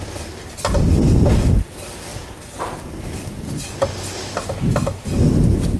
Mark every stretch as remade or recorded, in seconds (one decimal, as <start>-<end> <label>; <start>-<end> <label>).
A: 0.0-5.8 recorded